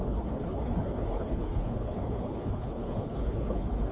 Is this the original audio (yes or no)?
no